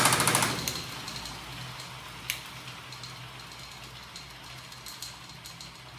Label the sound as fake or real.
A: real